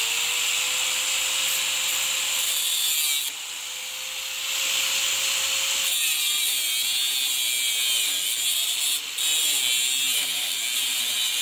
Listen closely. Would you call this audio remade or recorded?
recorded